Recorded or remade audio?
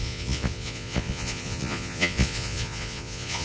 remade